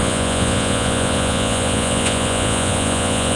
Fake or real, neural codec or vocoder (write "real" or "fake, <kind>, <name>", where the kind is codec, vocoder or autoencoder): fake, vocoder, Vocos